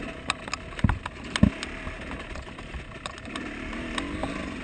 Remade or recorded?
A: recorded